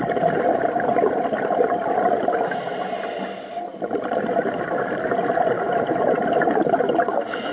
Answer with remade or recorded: recorded